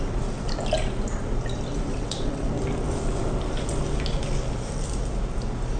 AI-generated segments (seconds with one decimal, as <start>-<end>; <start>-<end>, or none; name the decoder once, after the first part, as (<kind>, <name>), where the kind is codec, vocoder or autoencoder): 1.9-2.5 (vocoder, WaveNeXt)